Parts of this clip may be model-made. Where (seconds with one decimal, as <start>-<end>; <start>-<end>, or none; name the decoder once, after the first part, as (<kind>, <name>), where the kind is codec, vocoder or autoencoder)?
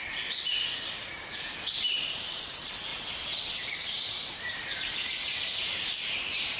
1.3-2.9 (vocoder, BigVGAN v2); 3.6-6.6